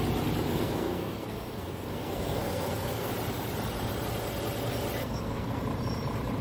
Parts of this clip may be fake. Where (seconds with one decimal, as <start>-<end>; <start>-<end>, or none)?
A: 0.5-3.1; 5.0-5.6